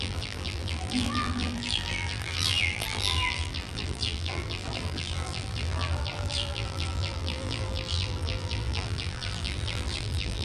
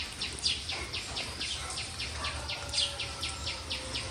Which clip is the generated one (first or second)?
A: first